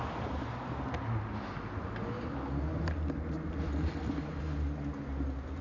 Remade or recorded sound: recorded